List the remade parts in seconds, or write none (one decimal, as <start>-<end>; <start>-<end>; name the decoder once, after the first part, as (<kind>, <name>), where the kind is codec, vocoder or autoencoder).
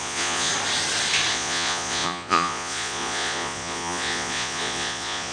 0.0-0.5 (vocoder, Vocos); 1.3-5.3